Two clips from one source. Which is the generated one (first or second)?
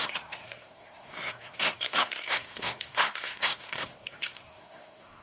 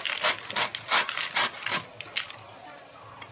first